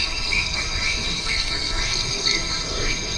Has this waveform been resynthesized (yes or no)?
yes